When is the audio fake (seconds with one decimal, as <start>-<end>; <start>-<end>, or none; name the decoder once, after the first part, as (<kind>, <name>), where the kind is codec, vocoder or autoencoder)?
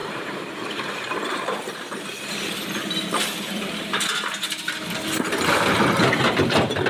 0.0-2.5 (vocoder, BigVGAN v2)